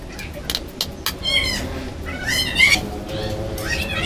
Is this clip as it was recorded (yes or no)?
yes